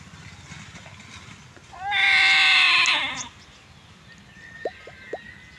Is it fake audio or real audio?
real